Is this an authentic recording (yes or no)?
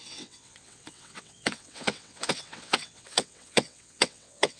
no